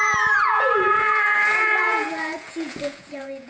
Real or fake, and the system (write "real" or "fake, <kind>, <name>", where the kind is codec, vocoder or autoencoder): fake, vocoder, Vocos